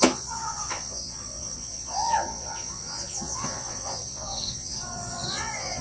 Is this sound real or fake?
fake